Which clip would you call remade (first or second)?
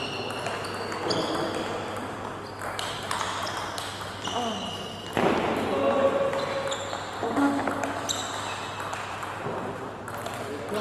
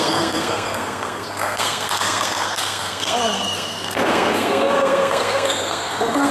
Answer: second